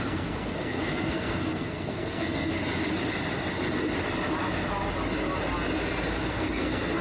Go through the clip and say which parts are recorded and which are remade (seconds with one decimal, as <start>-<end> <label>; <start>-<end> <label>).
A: 0.0-2.5 remade; 2.5-6.3 recorded; 6.3-7.0 remade